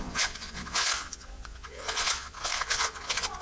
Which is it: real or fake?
fake